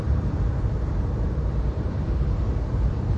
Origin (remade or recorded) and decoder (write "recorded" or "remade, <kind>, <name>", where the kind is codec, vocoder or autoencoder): remade, vocoder, BigVGAN v2